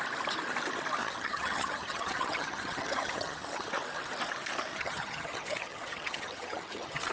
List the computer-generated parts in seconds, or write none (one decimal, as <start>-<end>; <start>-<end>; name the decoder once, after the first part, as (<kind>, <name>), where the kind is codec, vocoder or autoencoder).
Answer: 1.0-3.7 (vocoder, HiFi-GAN); 4.7-7.1